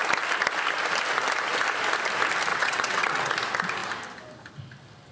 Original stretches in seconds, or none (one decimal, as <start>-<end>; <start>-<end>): 0.0-2.5; 3.3-5.1